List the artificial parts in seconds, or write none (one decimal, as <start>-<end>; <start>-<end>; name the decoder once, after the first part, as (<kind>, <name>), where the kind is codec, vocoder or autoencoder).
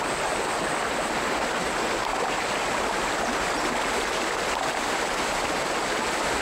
none